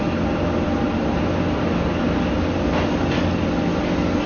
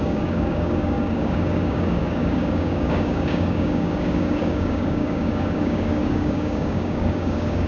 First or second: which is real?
first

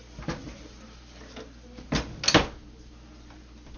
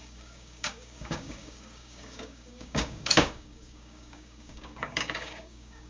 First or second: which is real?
first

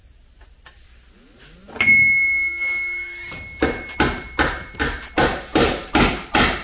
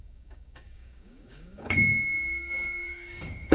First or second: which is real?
first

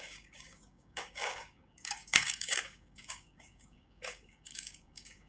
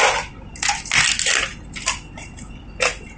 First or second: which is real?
second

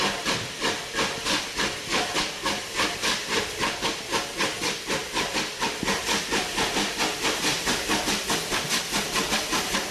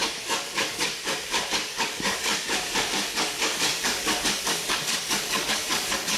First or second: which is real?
first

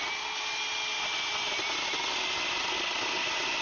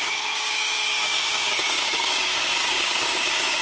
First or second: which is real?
first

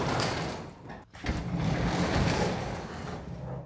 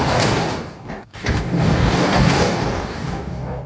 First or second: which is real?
first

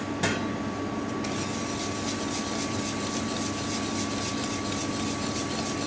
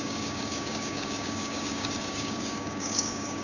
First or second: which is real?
first